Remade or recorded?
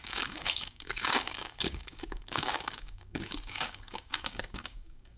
remade